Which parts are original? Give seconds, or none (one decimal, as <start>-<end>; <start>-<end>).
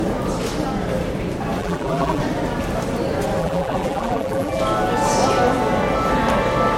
0.0-1.6; 2.2-3.4; 4.6-6.8